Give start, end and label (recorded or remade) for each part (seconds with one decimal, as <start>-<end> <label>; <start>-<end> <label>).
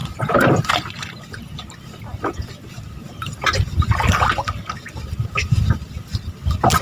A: 0.0-6.8 recorded